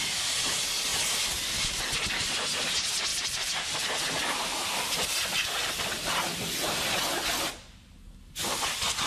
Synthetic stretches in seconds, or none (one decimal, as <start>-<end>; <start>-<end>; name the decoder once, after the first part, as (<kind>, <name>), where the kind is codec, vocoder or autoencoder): 3.1-3.6 (vocoder, BigVGAN v2)